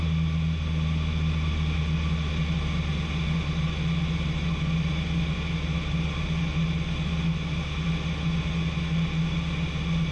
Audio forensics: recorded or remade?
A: recorded